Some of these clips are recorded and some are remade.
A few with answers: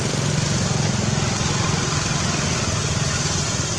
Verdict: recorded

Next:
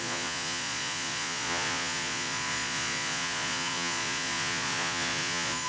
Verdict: remade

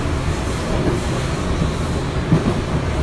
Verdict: recorded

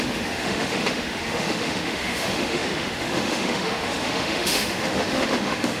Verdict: remade